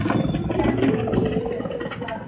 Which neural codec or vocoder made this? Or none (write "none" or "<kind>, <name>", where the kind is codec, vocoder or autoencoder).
none